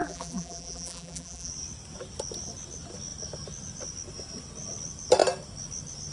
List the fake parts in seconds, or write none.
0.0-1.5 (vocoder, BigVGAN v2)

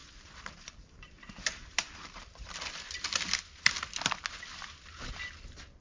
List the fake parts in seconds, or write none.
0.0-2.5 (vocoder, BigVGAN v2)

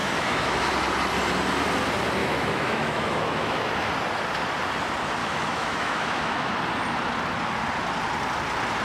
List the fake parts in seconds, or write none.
0.0-0.7 (autoencoder, DAC-VAE); 2.2-3.9; 5.2-6.6

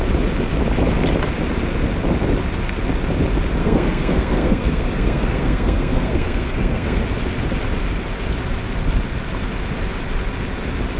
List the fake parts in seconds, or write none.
3.6-7.0 (codec, SNAC)